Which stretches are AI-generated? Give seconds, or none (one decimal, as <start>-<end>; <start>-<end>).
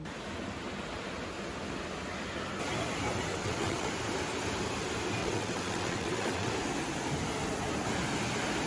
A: 3.3-3.9; 5.2-6.5